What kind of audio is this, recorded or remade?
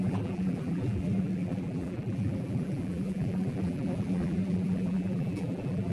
remade